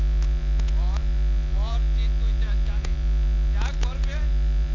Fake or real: fake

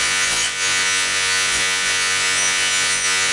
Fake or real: fake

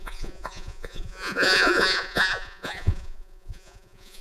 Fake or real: fake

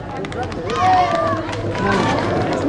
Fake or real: real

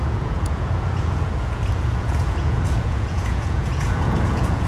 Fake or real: fake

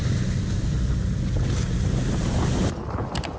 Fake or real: real